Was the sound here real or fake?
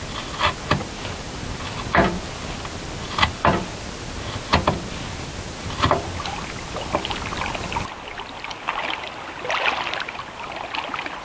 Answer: real